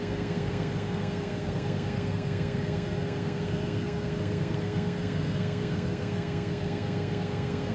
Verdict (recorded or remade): remade